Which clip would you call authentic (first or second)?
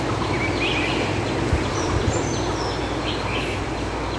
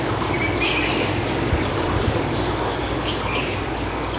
first